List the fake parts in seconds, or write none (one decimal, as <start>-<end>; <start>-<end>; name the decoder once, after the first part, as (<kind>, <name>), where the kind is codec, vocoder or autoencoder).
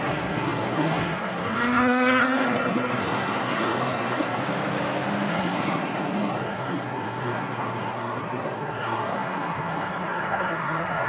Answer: 0.0-4.4 (codec, SNAC); 5.3-11.1